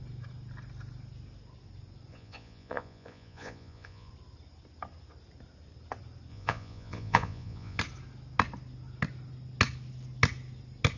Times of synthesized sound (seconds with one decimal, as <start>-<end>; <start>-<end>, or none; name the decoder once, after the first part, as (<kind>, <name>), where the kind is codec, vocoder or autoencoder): 2.1-4.1 (vocoder, Vocos); 6.3-7.8